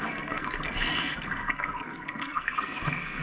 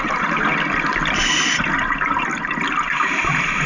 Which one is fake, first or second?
first